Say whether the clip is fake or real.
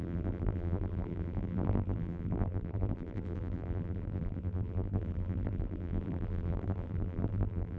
fake